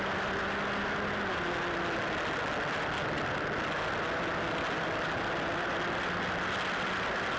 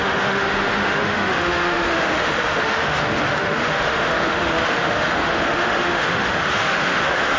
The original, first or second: first